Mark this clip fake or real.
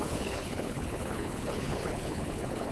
fake